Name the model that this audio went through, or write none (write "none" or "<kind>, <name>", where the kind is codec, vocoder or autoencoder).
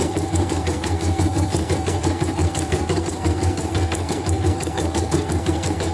codec, SNAC